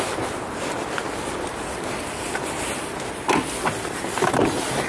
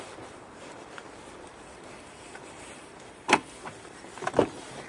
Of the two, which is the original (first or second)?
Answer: first